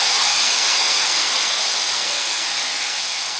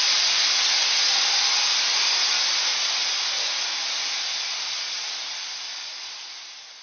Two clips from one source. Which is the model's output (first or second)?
first